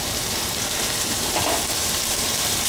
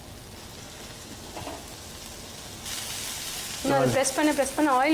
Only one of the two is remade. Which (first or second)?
first